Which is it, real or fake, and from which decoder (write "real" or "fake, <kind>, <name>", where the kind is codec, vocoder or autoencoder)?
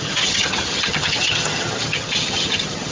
fake, vocoder, HiFi-GAN